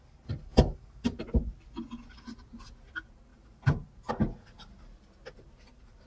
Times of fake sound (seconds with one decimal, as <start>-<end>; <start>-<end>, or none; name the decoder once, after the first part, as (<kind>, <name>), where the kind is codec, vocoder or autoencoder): 0.5-1.2 (vocoder, BigVGAN v2)